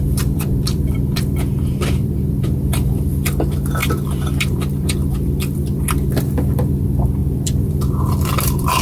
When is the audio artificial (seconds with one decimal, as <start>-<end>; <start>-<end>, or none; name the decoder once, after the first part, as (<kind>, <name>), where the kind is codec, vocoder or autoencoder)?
0.0-8.8 (vocoder, BigVGAN v2)